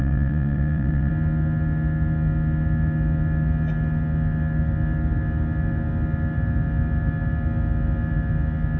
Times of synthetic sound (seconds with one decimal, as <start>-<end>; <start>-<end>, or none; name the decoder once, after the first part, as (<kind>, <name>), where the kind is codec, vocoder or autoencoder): 0.0-1.1 (vocoder, WaveNeXt)